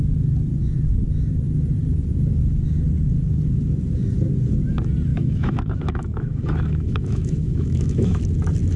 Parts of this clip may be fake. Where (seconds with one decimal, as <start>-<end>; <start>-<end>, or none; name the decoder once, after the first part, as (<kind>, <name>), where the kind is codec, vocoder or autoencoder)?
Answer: 5.1-8.2 (autoencoder, DAC-VAE)